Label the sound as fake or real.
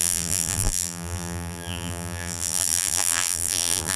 fake